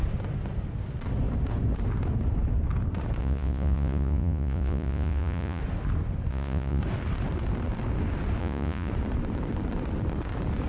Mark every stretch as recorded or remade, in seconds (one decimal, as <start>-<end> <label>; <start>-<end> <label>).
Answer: 0.0-3.2 recorded; 3.2-5.6 remade; 5.6-6.3 recorded; 6.3-6.8 remade; 6.8-8.4 recorded; 8.4-8.9 remade; 8.9-10.7 recorded